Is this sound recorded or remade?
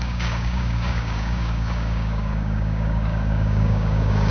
remade